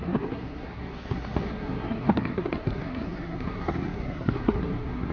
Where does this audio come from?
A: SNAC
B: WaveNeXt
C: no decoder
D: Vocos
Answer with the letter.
A